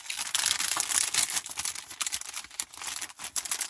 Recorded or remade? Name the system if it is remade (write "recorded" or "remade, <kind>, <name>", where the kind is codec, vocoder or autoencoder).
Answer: recorded